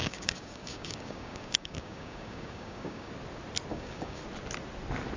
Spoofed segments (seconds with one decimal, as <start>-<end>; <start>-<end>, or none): 0.0-3.1; 3.7-4.2